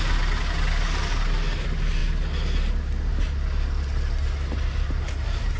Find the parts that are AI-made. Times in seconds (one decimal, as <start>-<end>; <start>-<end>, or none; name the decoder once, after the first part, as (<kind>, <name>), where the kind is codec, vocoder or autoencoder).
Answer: none

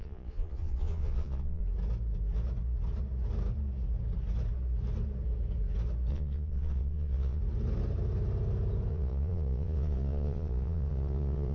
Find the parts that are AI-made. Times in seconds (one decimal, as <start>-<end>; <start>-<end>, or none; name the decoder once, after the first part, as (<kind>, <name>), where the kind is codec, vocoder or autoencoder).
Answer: 0.0-1.6 (vocoder, Vocos); 6.1-7.4; 8.9-11.5